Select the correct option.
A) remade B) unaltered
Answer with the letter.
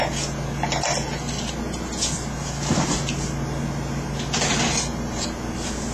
B